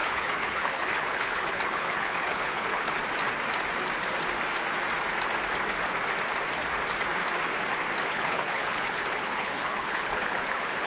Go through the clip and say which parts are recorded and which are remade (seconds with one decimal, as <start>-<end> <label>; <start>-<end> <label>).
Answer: 0.0-3.0 remade; 3.0-8.1 recorded; 8.1-10.9 remade